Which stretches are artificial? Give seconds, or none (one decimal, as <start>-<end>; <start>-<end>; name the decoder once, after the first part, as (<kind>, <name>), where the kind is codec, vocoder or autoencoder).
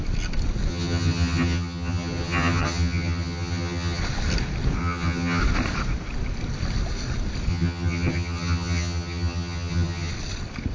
0.7-4.0 (vocoder, HiFi-GAN); 4.8-5.4; 7.5-10.1